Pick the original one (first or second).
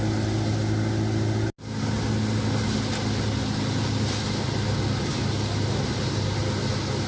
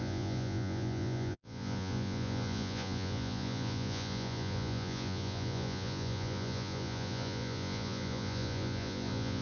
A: first